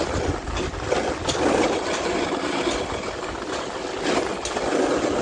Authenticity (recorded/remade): recorded